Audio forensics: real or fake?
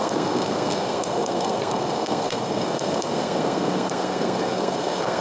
fake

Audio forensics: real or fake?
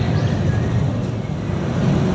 real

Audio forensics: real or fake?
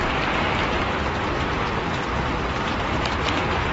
fake